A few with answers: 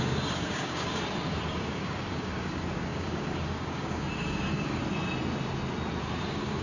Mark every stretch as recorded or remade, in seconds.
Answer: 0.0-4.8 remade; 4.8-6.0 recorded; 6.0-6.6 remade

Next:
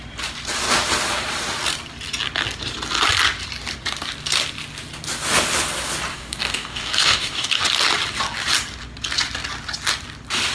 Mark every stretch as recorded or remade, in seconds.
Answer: 0.0-6.1 recorded; 6.1-7.6 remade; 7.6-10.5 recorded

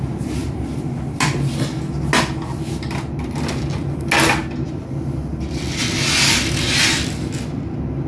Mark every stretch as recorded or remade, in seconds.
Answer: 0.0-8.1 recorded

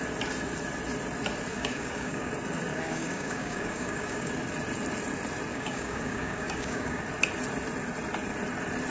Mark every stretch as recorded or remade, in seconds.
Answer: 0.0-1.5 recorded; 1.5-2.3 remade; 2.3-2.7 recorded; 2.7-4.3 remade; 4.3-5.5 recorded; 5.5-7.0 remade; 7.0-8.9 recorded